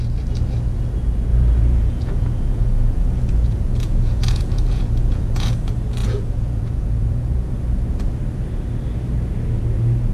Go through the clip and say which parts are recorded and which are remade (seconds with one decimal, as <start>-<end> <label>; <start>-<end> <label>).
0.0-1.3 recorded; 1.3-5.5 remade; 5.5-6.0 recorded; 6.0-7.5 remade; 7.5-10.1 recorded